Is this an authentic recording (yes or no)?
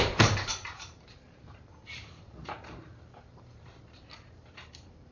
no